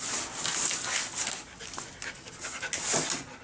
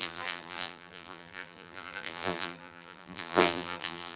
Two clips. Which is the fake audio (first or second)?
second